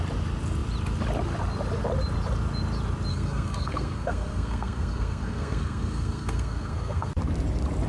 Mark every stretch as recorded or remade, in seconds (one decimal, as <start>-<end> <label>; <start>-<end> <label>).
0.0-3.1 recorded; 3.1-7.1 remade; 7.1-7.9 recorded